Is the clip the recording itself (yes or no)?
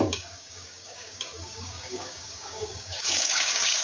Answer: no